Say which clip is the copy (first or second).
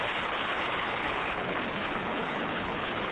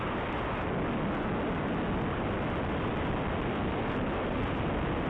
first